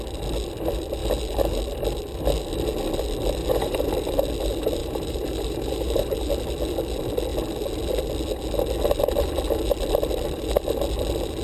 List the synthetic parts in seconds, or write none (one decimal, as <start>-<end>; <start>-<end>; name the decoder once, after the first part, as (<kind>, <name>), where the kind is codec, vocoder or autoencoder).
3.4-3.9 (vocoder, BigVGAN v2); 4.8-6.3